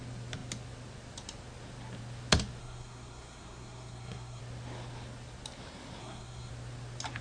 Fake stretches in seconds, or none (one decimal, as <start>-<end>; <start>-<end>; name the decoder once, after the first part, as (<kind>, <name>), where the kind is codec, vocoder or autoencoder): 2.6-4.4 (codec, SNAC); 6.0-6.5